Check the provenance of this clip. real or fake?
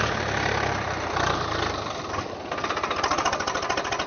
fake